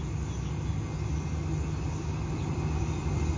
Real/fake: real